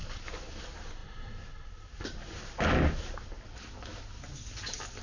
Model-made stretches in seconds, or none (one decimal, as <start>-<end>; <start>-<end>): none